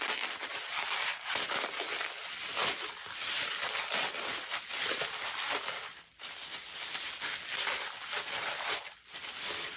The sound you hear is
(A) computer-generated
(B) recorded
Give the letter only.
B